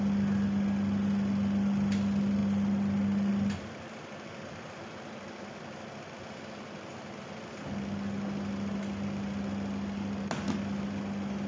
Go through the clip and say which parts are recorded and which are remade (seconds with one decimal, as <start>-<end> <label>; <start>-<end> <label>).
0.0-11.5 recorded